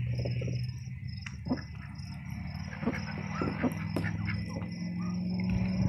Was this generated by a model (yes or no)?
no